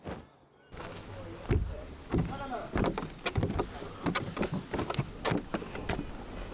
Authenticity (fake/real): real